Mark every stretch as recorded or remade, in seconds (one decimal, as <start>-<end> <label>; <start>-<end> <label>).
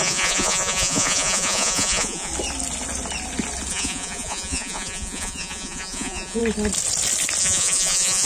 0.0-2.3 remade; 2.3-3.7 recorded; 3.7-6.4 remade; 6.4-7.4 recorded; 7.4-8.3 remade